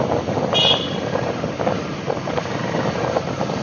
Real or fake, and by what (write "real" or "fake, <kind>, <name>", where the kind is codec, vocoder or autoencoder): real